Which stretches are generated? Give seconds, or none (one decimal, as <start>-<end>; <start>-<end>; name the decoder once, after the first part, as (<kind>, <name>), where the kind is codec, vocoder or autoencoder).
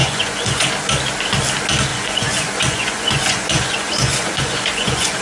0.0-0.7 (vocoder, Vocos); 1.9-5.2